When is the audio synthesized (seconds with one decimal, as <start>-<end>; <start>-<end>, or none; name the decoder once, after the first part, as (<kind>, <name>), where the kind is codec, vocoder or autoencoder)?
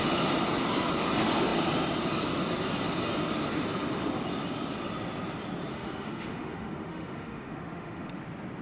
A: 5.7-8.2 (autoencoder, DAC-VAE)